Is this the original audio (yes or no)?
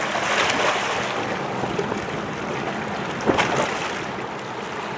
yes